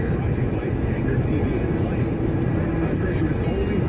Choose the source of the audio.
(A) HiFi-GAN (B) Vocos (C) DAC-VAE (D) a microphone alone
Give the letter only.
D